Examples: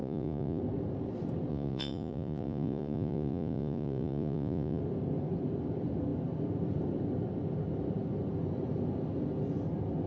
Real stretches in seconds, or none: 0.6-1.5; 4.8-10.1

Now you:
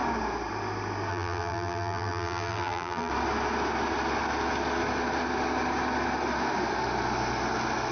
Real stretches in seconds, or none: 0.0-1.1; 3.1-7.9

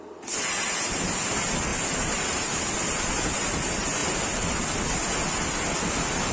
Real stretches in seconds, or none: 0.0-6.3

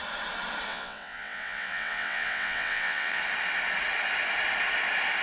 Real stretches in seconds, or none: 0.0-0.7; 3.2-5.2